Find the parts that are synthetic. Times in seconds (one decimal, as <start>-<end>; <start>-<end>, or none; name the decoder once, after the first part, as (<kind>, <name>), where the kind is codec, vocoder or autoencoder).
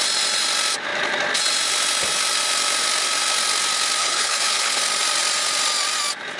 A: 4.0-4.8 (codec, HILCodec)